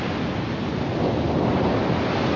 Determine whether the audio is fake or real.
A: real